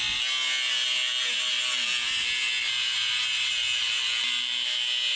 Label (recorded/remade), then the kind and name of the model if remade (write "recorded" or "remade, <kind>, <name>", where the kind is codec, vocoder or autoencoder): recorded